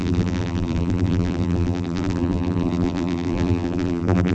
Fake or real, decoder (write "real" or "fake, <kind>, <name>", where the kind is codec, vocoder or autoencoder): fake, vocoder, BigVGAN v2